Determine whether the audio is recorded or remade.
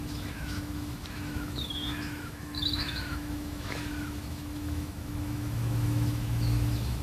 remade